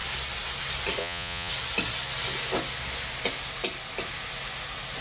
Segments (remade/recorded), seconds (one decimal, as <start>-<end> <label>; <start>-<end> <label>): 0.0-1.0 recorded; 1.0-1.5 remade; 1.5-5.0 recorded